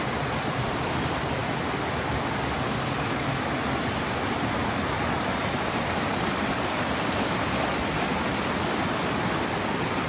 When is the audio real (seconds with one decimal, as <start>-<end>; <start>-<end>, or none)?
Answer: 0.0-10.1